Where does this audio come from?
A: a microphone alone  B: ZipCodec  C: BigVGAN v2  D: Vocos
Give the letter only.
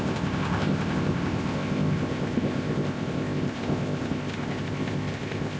B